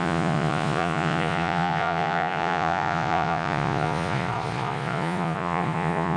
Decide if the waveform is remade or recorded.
remade